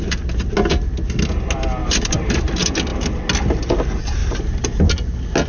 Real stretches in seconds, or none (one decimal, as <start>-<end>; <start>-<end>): 0.0-1.8; 2.5-4.2; 4.9-5.5